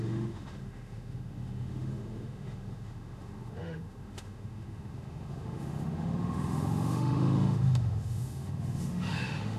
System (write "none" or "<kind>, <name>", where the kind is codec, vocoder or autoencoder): autoencoder, DAC-VAE